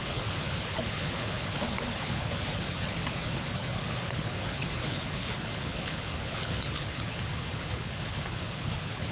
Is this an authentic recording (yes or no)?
no